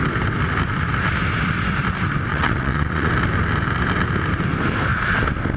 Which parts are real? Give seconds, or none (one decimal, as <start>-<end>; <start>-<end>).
0.0-2.3; 3.1-5.6